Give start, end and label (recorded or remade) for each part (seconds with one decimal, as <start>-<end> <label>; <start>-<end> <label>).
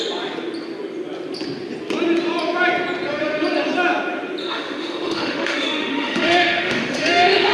0.0-4.4 recorded; 4.4-7.5 remade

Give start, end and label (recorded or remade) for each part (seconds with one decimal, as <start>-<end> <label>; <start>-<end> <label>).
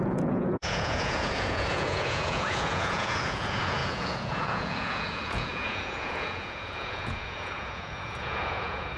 0.0-9.0 remade